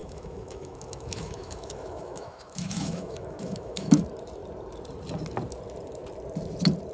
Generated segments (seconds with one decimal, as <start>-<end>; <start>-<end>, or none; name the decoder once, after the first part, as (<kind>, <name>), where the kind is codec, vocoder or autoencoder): 0.0-4.0 (autoencoder, DAC-VAE)